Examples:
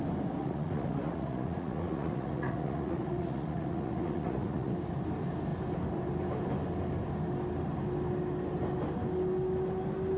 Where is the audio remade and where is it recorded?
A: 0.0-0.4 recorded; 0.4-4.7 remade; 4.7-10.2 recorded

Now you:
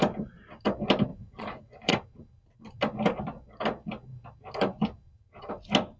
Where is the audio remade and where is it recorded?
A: 0.0-1.1 recorded; 1.1-1.9 remade; 1.9-6.0 recorded